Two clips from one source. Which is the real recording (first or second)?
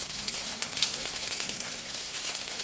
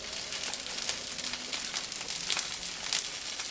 second